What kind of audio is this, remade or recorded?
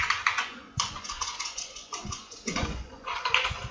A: remade